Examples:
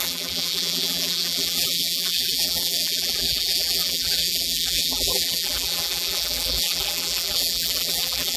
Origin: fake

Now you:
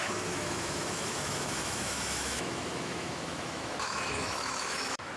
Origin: fake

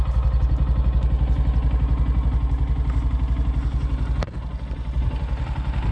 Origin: real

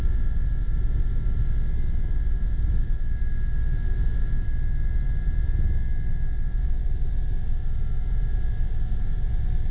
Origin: real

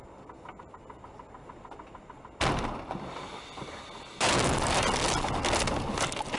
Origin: real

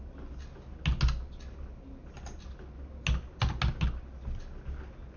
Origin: real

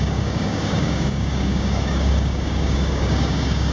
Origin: fake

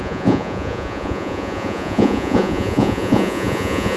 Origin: fake